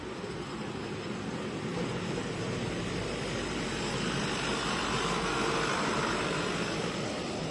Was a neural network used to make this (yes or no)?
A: no